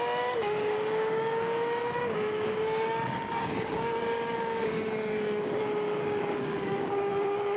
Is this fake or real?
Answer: fake